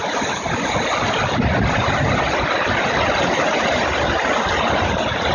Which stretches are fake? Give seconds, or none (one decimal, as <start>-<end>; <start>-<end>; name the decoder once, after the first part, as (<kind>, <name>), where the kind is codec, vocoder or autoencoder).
none